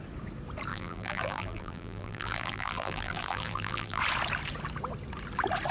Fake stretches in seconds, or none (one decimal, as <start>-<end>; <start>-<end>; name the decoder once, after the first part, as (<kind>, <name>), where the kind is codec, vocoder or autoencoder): 0.7-4.0 (vocoder, BigVGAN v2)